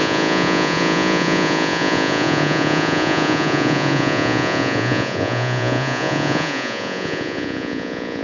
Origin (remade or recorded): remade